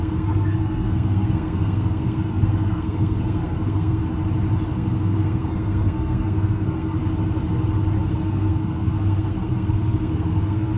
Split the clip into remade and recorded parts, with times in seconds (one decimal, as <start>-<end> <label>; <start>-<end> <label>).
0.0-4.0 remade; 4.0-4.7 recorded; 4.7-7.0 remade; 7.0-8.1 recorded; 8.1-10.8 remade